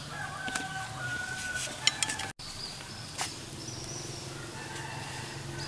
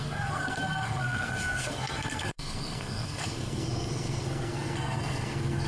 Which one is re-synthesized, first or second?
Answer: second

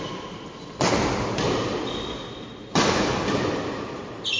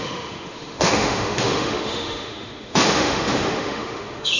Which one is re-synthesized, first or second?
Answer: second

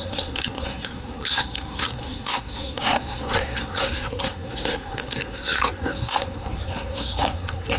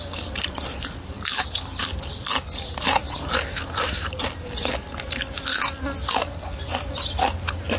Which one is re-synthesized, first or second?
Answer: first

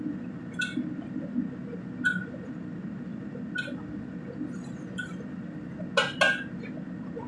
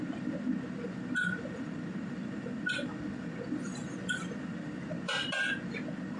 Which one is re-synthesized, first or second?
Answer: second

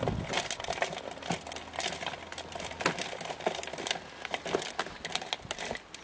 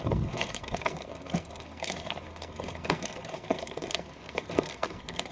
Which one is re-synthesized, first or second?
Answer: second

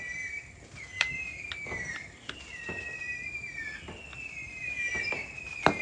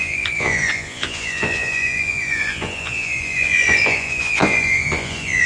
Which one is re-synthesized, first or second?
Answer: second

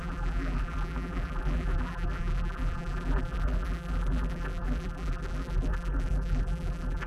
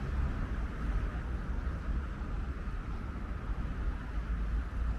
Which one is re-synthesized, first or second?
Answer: first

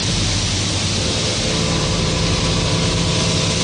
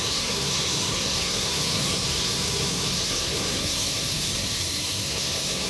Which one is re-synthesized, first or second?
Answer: second